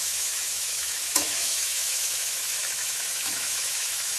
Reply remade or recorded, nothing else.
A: remade